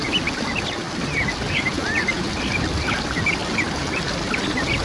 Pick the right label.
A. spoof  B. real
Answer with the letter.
B